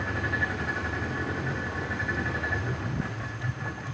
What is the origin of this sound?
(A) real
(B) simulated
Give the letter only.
A